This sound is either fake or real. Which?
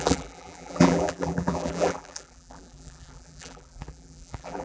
fake